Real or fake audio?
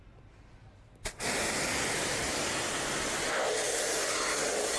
real